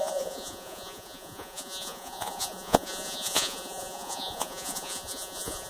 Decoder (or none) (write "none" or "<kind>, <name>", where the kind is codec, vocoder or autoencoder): vocoder, Vocos